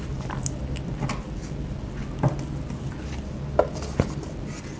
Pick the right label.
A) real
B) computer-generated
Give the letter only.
A